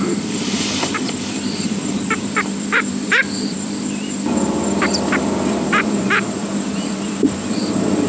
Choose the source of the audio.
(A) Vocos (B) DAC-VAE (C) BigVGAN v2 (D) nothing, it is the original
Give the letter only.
C